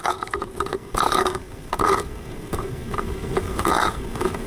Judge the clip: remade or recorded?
remade